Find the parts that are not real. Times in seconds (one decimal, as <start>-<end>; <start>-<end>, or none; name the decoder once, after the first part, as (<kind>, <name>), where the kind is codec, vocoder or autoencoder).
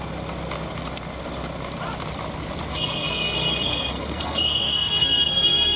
2.7-5.8 (codec, SNAC)